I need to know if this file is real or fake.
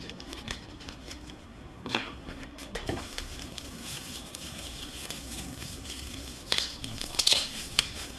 fake